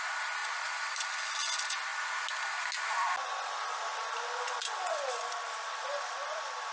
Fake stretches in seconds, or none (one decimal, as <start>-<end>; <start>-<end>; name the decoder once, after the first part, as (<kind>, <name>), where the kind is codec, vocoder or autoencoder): 0.4-1.1 (vocoder, BigVGAN v2); 4.6-5.2